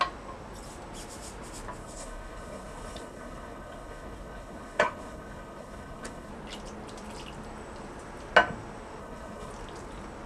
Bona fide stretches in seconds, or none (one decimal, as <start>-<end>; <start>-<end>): 0.0-1.8; 6.3-9.0; 9.5-10.3